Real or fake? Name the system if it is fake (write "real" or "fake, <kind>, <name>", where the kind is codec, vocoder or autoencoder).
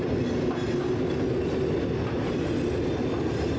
real